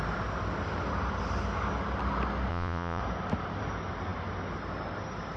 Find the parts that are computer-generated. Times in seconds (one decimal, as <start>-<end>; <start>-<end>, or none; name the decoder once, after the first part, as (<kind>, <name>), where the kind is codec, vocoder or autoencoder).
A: 2.5-3.0 (vocoder, Vocos)